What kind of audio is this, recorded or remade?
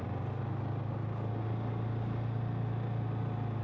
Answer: recorded